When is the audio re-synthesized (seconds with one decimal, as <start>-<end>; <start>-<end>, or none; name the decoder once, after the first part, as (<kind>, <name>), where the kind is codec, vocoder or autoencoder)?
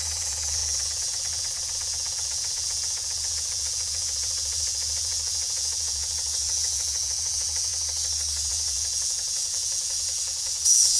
0.0-7.7 (vocoder, Vocos); 8.5-11.0